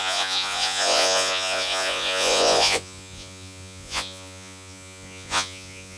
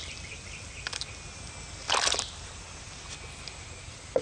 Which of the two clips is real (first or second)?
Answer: second